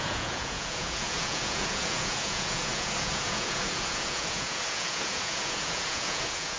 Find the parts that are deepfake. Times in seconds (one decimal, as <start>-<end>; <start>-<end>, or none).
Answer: 0.0-6.6